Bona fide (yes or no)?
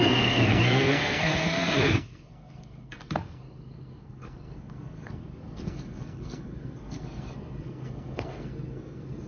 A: no